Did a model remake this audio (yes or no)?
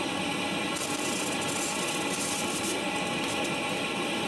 no